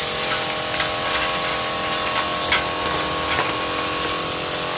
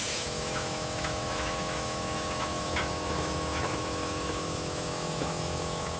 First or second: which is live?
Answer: first